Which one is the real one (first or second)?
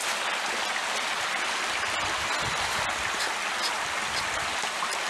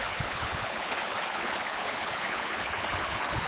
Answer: first